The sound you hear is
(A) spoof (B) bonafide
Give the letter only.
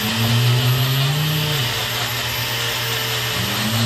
B